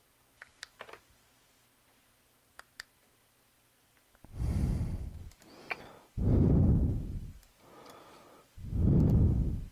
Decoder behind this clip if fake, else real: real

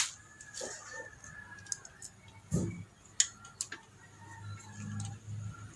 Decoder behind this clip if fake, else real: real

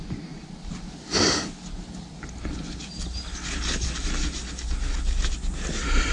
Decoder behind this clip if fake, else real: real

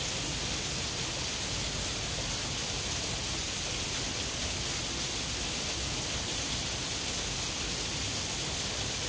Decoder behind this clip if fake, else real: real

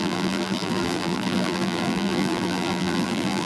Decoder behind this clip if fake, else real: fake, vocoder, BigVGAN v2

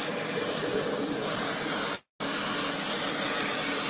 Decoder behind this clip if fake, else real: real